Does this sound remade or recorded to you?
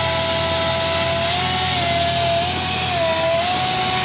recorded